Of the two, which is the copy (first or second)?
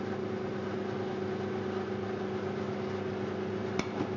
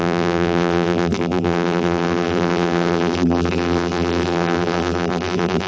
second